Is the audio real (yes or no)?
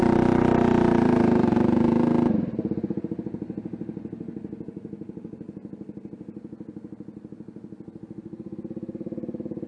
yes